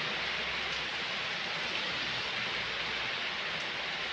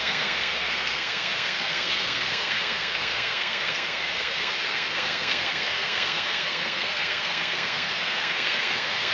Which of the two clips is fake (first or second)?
second